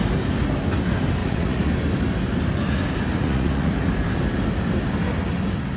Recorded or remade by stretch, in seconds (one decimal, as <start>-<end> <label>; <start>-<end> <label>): 0.0-1.2 recorded; 1.2-1.7 remade; 1.7-3.1 recorded; 3.1-3.7 remade; 3.7-5.8 recorded